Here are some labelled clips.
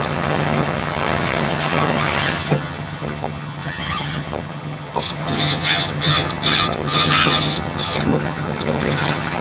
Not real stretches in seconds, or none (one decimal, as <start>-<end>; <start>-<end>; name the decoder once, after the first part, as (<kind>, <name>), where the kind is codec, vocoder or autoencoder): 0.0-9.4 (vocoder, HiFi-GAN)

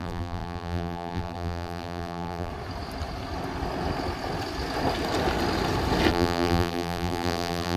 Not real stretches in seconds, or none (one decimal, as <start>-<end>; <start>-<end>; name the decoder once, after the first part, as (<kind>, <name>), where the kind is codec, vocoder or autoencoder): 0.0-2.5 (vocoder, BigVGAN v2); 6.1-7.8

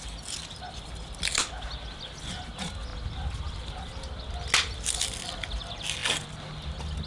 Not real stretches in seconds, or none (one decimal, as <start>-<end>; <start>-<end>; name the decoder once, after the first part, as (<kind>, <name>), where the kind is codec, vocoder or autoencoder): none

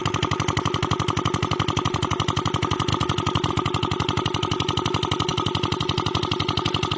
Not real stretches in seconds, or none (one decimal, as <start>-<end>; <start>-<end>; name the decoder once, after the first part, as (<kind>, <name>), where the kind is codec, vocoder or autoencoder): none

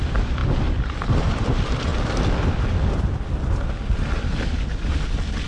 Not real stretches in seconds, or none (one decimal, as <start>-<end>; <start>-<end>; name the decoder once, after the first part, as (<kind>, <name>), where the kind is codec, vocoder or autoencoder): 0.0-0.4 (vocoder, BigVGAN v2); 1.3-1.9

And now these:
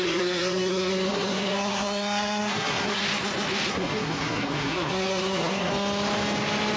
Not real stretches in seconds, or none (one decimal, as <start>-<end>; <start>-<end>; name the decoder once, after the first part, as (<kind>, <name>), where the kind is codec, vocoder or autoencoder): 0.0-3.0 (codec, SNAC); 3.7-5.7

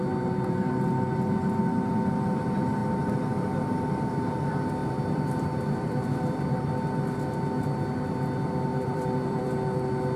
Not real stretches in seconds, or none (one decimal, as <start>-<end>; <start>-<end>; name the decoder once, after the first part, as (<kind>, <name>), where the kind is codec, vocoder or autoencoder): 4.8-6.7 (vocoder, BigVGAN v2); 8.7-9.4